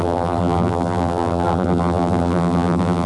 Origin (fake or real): fake